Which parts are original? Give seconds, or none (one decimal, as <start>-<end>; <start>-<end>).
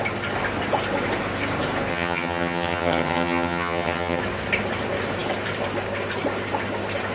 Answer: 0.0-1.9; 4.2-7.1